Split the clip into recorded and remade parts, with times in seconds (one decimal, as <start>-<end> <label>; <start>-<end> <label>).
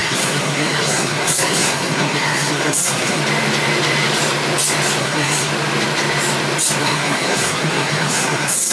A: 0.0-3.2 remade; 3.2-5.0 recorded; 5.0-5.5 remade; 5.5-6.8 recorded; 6.8-8.7 remade